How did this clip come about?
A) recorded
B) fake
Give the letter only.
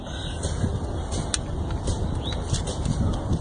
A